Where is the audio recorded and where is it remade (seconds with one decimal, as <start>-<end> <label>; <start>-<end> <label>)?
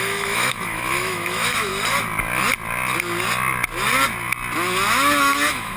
0.0-1.7 remade; 1.7-5.2 recorded; 5.2-5.8 remade